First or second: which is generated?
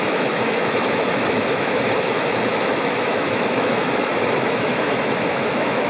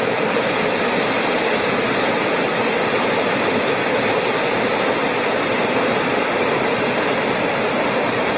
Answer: first